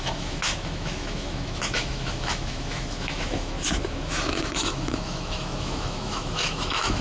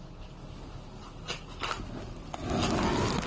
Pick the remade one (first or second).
first